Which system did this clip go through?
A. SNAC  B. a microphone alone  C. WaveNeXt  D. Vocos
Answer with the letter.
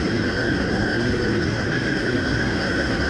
A